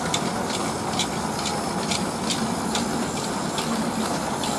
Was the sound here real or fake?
real